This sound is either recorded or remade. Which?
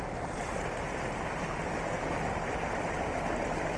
recorded